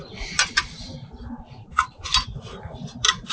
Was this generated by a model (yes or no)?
yes